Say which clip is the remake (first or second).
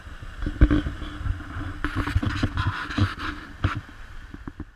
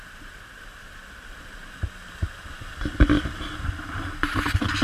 second